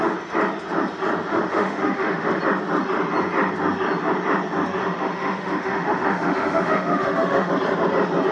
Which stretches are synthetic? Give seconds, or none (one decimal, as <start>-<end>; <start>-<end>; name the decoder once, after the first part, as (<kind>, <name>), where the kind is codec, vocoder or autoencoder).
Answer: 1.3-2.4 (autoencoder, DAC-VAE); 4.8-7.5